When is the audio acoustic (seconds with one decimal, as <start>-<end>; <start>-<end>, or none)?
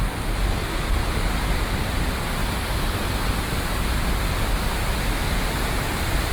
0.0-0.6; 1.6-2.4; 3.3-6.3